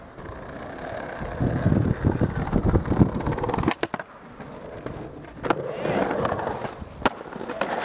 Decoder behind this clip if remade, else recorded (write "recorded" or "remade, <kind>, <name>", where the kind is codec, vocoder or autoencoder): recorded